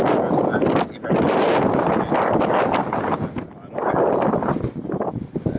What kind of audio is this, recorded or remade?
recorded